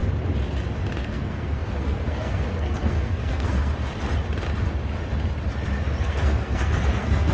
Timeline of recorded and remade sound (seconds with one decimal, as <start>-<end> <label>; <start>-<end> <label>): 0.0-1.0 recorded; 1.0-3.7 remade; 3.7-6.0 recorded; 6.0-7.3 remade